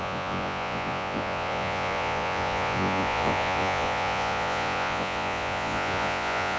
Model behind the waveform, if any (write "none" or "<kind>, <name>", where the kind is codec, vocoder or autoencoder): vocoder, Vocos